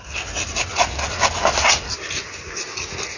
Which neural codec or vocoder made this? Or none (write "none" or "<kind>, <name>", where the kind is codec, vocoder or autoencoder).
none